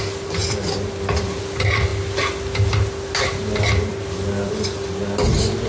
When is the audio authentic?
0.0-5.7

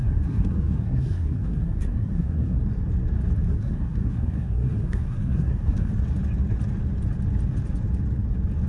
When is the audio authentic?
2.6-3.5; 5.9-8.7

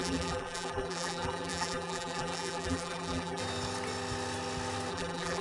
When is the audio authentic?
3.4-4.9